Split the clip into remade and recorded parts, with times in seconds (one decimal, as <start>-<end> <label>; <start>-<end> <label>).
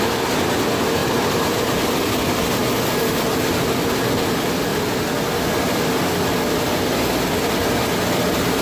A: 0.0-8.6 recorded